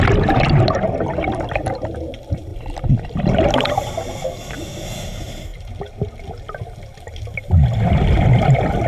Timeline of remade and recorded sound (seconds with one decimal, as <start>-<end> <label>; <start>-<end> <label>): 0.0-8.9 recorded